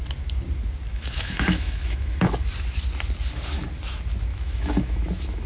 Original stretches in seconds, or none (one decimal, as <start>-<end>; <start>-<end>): 0.0-0.9; 2.5-4.3